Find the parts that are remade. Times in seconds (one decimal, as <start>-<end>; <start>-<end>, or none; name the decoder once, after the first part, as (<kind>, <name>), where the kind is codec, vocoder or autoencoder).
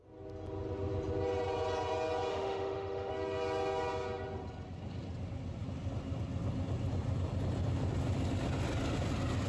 2.3-3.1 (autoencoder, DAC-VAE)